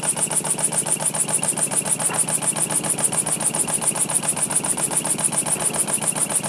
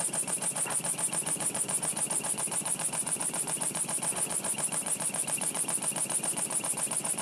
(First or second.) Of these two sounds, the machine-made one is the second